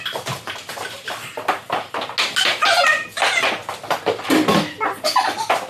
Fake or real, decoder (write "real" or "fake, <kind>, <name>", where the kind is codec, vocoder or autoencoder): real